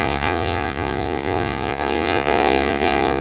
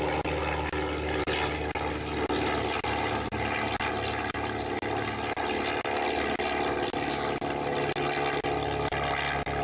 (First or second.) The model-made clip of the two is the first